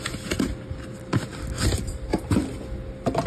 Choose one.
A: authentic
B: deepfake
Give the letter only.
A